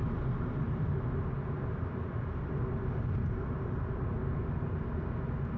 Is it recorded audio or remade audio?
recorded